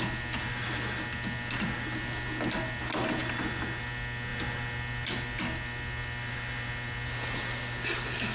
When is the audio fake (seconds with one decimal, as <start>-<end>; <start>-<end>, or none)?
none